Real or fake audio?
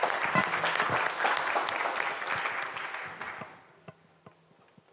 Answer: real